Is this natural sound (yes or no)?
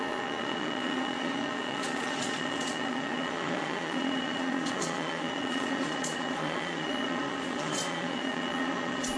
no